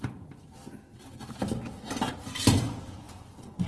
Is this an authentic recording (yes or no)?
yes